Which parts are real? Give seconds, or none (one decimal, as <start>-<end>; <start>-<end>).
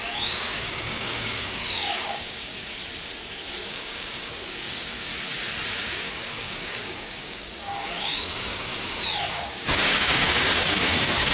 2.5-3.7; 5.1-5.8; 8.7-9.3